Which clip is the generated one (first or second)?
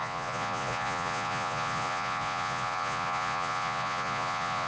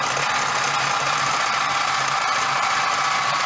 first